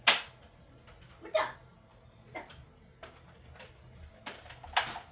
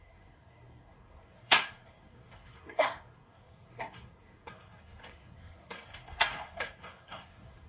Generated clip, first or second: second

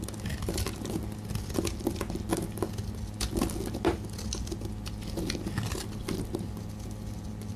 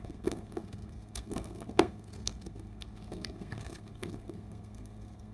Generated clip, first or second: second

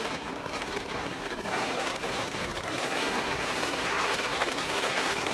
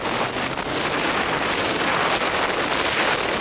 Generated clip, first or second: first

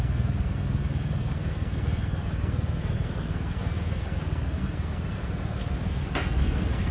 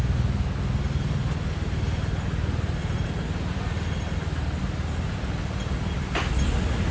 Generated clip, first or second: first